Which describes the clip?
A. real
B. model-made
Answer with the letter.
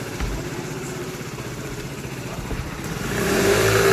B